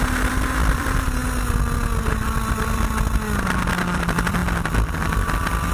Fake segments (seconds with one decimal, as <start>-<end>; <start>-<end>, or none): 0.0-1.2; 2.5-4.4; 5.2-5.7